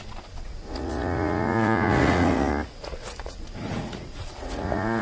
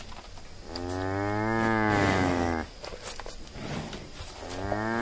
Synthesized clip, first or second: first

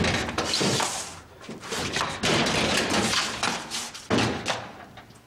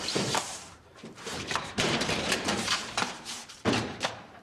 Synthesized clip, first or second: second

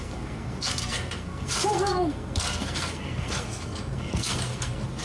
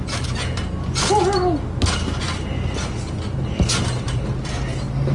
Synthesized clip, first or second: first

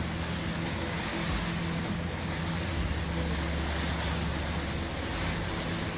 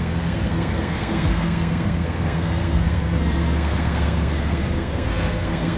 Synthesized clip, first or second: second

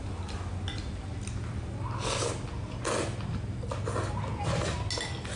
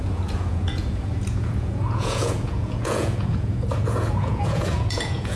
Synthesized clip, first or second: second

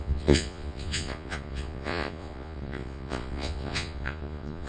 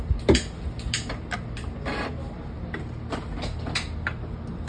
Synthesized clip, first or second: first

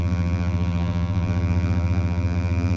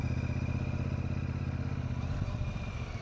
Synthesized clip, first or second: first